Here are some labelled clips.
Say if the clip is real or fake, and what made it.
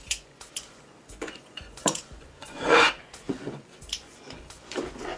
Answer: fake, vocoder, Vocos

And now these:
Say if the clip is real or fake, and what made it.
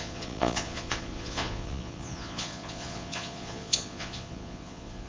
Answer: fake, vocoder, Vocos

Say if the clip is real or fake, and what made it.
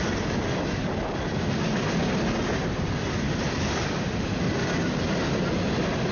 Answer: real